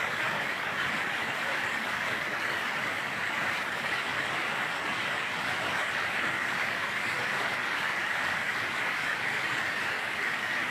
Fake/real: fake